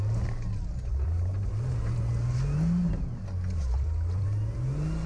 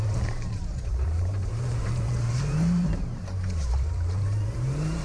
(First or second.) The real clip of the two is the first